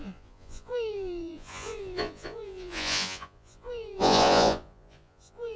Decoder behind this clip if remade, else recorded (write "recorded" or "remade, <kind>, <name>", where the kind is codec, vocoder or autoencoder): remade, vocoder, Vocos